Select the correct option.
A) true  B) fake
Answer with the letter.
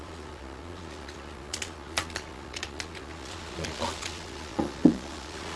B